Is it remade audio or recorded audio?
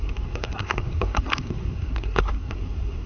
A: remade